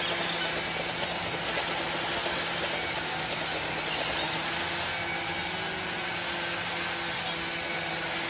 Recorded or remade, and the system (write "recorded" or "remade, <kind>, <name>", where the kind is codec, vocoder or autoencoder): recorded